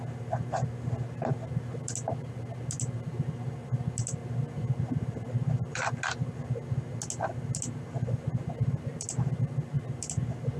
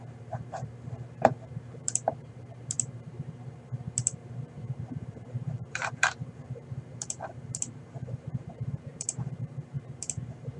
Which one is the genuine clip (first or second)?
first